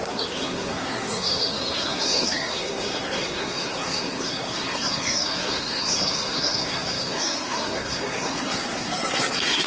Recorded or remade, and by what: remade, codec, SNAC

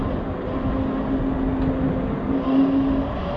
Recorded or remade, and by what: recorded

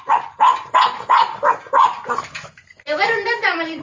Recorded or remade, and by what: recorded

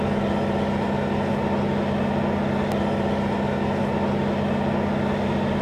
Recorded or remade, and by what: recorded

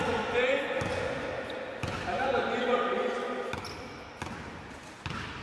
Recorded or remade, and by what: recorded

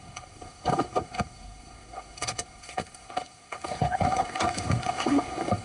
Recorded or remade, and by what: remade, codec, SNAC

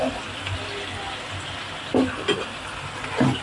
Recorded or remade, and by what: recorded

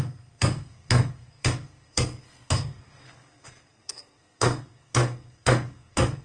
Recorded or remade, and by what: remade, codec, SNAC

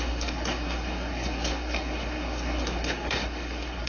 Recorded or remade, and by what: remade, codec, SNAC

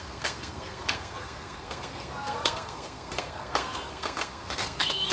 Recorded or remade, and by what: remade, codec, SNAC